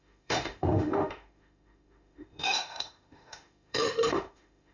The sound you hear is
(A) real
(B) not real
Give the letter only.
B